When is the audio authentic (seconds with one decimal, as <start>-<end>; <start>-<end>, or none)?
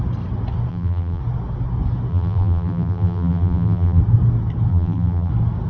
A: 0.0-0.7; 1.2-2.1; 4.0-4.7; 5.3-5.7